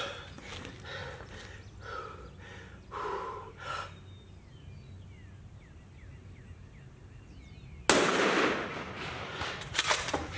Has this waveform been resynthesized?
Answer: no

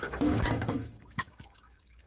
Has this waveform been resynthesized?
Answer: yes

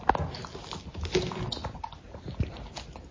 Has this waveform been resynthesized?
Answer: no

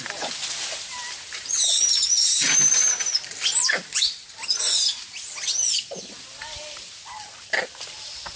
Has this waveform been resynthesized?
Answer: no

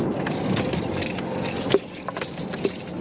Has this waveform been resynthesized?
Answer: no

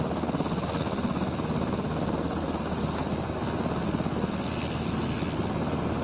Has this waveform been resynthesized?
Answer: no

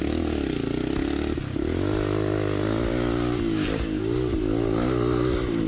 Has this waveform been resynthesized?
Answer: no